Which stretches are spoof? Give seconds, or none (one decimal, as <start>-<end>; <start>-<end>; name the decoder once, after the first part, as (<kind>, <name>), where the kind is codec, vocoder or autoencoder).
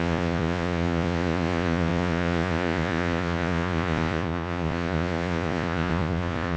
0.0-6.6 (vocoder, Vocos)